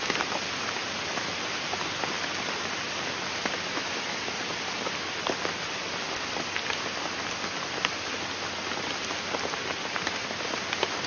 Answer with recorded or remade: recorded